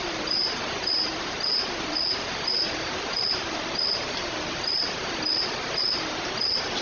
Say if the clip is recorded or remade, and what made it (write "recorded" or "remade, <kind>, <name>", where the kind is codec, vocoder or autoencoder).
remade, vocoder, BigVGAN v2